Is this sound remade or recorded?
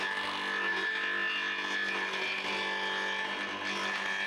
recorded